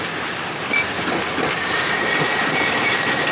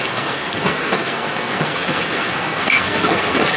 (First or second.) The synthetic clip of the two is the second